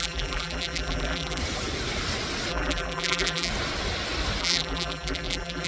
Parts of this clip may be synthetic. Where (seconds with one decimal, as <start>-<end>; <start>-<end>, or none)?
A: 0.0-1.4; 2.5-3.5; 4.4-5.7